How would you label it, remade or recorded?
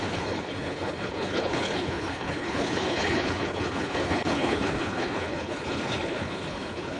remade